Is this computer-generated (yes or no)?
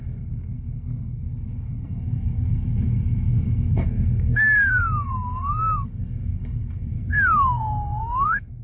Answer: yes